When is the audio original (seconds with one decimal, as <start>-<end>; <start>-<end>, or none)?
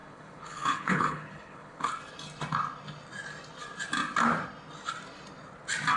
1.9-6.0